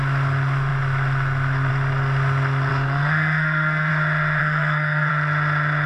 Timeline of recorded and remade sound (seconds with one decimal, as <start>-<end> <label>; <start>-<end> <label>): 0.0-2.7 recorded; 2.7-3.9 remade; 3.9-4.4 recorded; 4.4-5.1 remade; 5.1-5.9 recorded